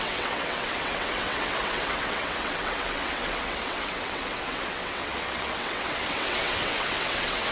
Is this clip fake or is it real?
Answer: fake